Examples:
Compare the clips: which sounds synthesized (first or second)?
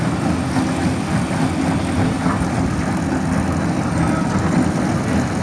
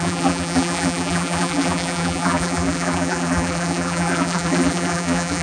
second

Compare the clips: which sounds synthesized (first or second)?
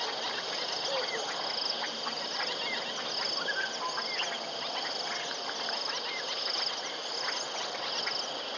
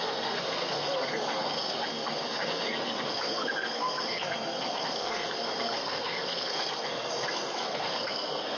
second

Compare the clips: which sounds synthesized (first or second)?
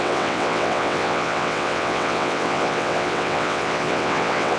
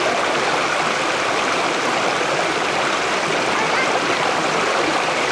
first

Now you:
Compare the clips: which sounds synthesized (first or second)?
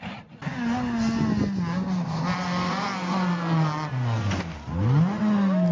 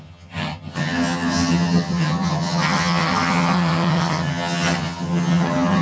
second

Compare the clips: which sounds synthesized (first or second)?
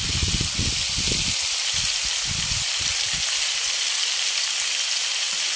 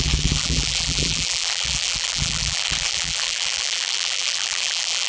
second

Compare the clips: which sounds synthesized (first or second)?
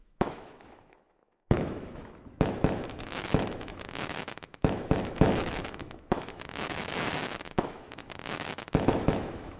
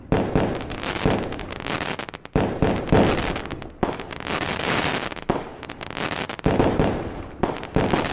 first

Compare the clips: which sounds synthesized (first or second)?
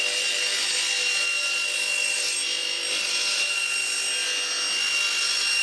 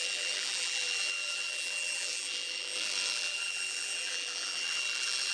second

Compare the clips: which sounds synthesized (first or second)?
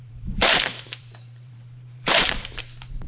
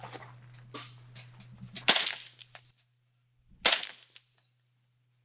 first